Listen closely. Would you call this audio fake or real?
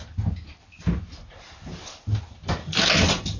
real